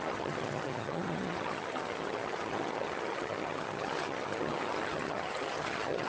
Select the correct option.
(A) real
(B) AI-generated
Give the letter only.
B